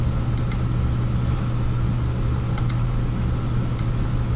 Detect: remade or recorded recorded